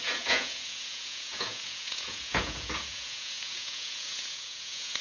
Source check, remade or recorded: remade